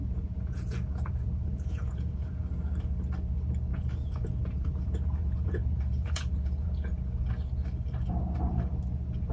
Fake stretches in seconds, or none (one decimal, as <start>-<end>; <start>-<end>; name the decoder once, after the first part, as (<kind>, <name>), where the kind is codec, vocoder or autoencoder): 0.0-2.4 (vocoder, Vocos); 3.7-7.3